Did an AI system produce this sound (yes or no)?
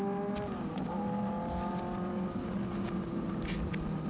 no